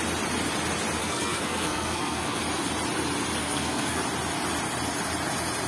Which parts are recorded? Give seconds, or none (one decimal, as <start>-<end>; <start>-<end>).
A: 0.0-1.0; 2.4-3.4; 4.0-5.7